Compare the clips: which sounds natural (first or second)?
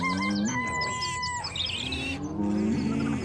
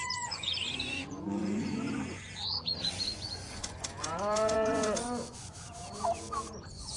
first